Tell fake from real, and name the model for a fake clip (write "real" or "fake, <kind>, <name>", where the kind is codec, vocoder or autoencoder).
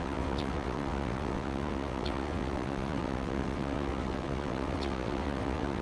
fake, vocoder, WaveNeXt